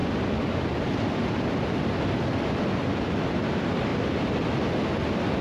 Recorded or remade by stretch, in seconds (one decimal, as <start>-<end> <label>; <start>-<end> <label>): 0.0-5.4 recorded